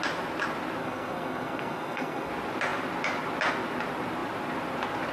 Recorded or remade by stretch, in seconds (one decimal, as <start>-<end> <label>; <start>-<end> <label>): 0.0-0.8 recorded; 0.8-2.3 remade; 2.3-5.1 recorded